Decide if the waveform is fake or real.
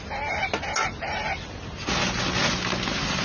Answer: real